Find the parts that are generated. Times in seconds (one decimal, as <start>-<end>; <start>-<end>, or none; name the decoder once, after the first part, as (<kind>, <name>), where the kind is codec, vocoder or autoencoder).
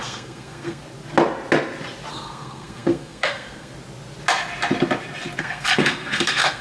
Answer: 0.0-0.8 (codec, SNAC); 2.1-3.7; 5.4-6.6